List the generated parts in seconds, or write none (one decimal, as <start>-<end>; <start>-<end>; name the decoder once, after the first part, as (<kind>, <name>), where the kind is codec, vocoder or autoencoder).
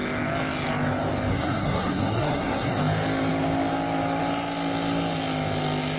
1.3-2.8 (codec, SNAC)